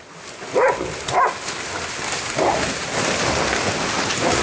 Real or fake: real